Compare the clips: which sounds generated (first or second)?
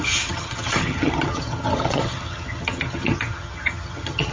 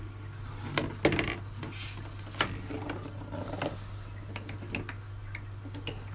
first